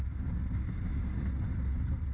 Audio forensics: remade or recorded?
recorded